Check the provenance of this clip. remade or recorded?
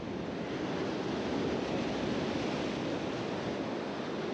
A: recorded